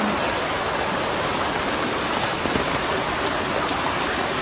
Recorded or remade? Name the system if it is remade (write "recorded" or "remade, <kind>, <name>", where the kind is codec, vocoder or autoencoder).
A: recorded